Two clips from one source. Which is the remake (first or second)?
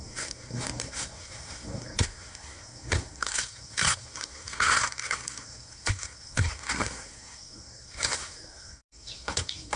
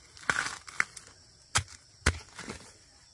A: first